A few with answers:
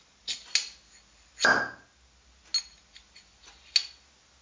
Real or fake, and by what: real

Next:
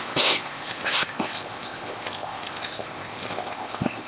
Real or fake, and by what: fake, codec, ZipCodec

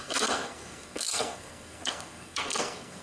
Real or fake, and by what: fake, codec, SNAC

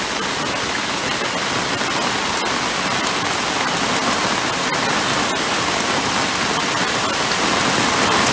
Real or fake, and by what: real